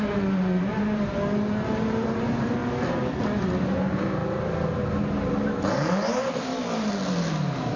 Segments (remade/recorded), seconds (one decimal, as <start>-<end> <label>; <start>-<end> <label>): 0.0-2.6 remade; 2.6-3.7 recorded; 3.7-4.2 remade; 4.2-5.1 recorded; 5.1-6.5 remade; 6.5-7.3 recorded; 7.3-7.8 remade